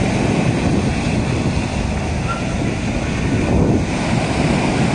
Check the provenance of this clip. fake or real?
real